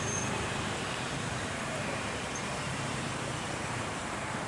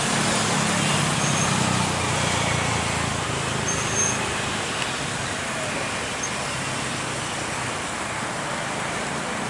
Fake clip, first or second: first